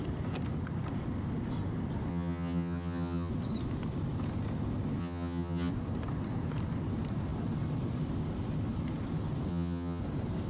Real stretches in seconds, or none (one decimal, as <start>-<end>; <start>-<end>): 0.0-2.1; 3.3-5.0; 5.7-9.5; 10.0-10.5